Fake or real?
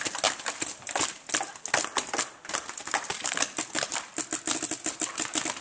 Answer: real